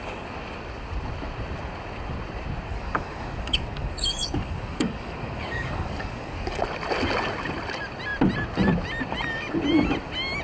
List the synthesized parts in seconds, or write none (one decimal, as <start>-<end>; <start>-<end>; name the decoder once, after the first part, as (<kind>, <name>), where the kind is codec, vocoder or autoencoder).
2.7-6.6 (codec, DAC)